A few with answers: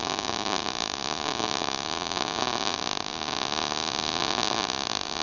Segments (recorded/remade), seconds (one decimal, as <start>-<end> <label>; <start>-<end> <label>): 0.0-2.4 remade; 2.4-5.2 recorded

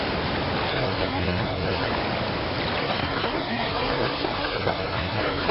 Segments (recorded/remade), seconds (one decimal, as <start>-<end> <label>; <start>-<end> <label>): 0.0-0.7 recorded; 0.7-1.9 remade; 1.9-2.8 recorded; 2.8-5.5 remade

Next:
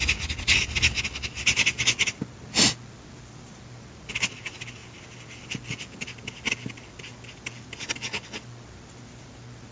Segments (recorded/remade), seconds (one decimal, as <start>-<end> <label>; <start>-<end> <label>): 0.0-9.7 recorded